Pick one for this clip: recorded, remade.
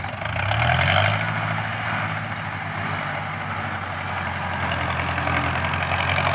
recorded